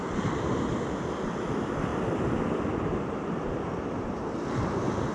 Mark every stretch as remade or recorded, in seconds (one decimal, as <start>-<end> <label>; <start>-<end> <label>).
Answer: 0.0-5.1 recorded